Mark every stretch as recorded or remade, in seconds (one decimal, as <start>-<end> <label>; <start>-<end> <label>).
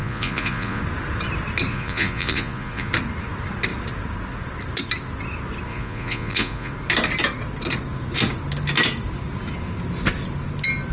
0.0-0.8 remade; 0.8-1.7 recorded; 1.7-2.9 remade; 2.9-5.7 recorded; 5.7-6.7 remade; 6.7-10.9 recorded